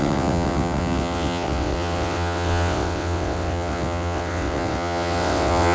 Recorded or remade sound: remade